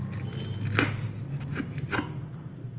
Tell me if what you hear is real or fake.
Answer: real